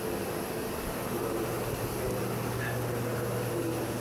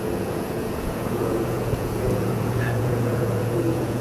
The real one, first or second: first